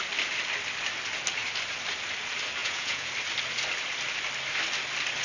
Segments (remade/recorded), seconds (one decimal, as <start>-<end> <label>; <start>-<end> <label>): 0.0-2.6 recorded; 2.6-3.1 remade; 3.1-5.2 recorded